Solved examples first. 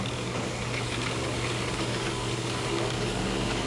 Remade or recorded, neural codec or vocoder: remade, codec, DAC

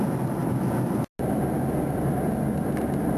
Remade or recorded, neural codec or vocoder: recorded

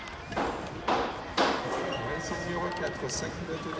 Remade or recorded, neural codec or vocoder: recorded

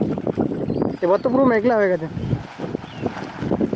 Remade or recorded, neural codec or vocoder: recorded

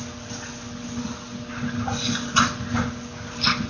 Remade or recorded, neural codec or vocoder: recorded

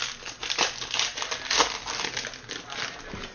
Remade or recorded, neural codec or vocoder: recorded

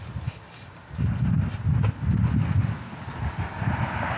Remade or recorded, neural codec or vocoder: recorded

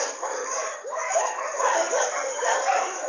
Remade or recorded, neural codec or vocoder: remade, codec, DAC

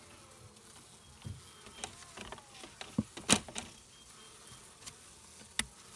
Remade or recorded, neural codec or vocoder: recorded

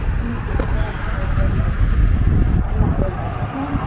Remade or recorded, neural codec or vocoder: recorded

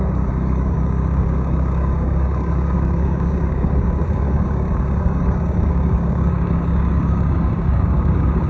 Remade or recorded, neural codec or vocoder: remade, codec, DAC